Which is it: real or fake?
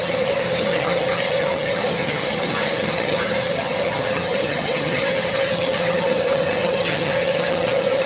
fake